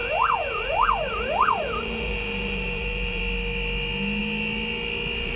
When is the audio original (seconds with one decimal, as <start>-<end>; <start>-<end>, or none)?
3.2-5.4